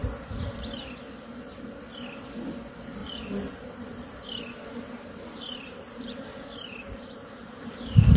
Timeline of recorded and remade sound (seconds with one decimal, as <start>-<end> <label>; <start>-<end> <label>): 0.0-3.0 recorded; 3.0-8.2 remade